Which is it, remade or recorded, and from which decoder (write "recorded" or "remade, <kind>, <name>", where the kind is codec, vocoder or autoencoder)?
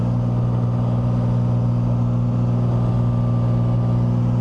recorded